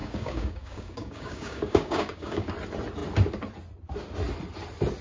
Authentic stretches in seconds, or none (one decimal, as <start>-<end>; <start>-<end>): 2.5-5.0